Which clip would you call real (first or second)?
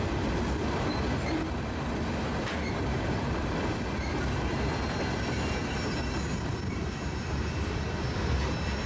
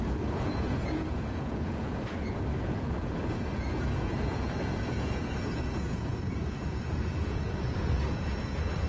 first